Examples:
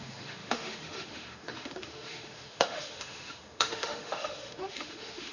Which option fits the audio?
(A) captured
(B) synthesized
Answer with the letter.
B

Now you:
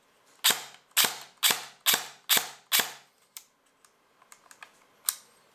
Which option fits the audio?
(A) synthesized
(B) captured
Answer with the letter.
B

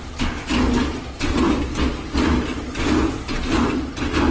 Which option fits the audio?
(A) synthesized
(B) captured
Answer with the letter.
B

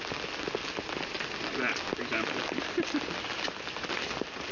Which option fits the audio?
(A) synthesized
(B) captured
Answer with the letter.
B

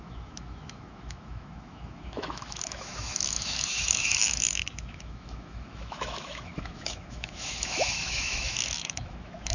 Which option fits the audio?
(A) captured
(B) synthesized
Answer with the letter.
B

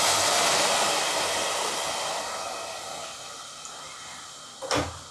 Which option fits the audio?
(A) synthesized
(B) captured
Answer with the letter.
B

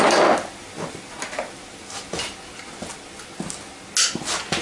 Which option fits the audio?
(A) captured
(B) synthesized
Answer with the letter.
A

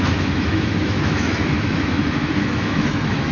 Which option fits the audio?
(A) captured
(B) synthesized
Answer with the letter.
B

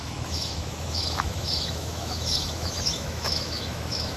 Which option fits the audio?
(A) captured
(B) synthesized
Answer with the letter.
B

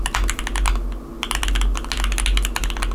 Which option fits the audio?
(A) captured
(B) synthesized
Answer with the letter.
A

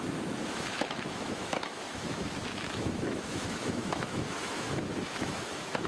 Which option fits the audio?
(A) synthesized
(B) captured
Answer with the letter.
A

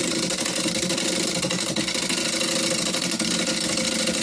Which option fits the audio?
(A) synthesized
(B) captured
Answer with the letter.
B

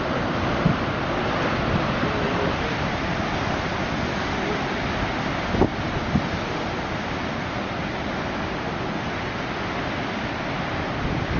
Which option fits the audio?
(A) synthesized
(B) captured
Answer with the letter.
B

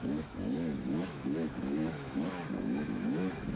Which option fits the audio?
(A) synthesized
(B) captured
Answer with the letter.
A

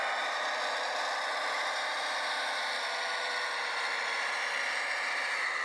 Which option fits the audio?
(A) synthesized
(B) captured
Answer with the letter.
B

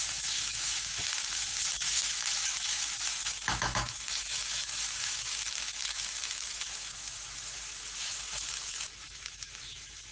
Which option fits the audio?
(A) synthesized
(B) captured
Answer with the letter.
A